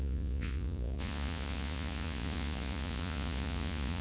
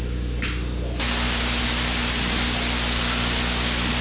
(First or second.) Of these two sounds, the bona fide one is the second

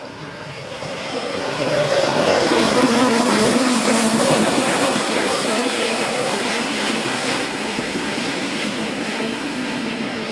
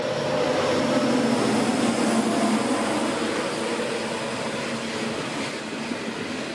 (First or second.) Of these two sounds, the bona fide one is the second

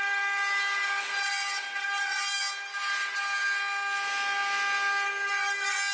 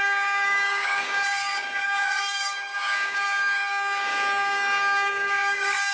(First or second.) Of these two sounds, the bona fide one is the first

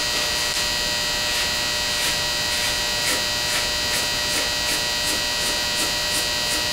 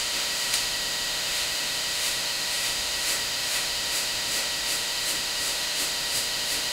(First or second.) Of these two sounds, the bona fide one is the first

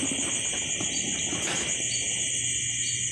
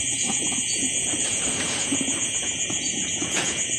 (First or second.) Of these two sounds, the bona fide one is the first